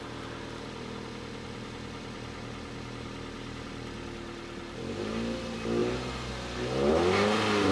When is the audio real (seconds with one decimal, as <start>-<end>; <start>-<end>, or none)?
0.0-7.7